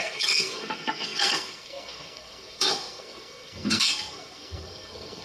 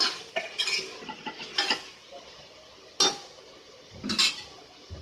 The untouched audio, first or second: second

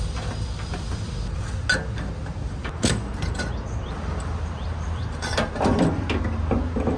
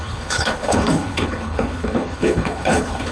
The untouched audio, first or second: first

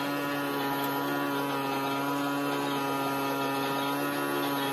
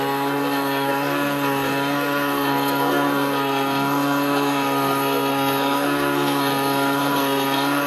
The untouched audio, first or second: first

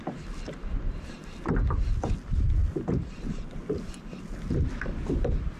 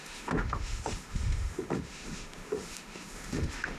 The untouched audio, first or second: first